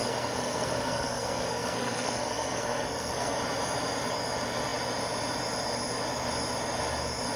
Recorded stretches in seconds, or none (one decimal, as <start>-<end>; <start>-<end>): 3.4-7.4